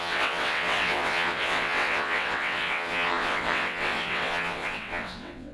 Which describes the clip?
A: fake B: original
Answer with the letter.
A